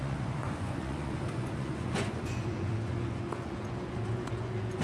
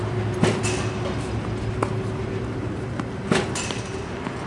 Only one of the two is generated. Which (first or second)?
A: first